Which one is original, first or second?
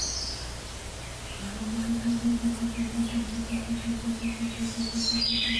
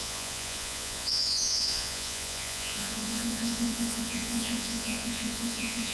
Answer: first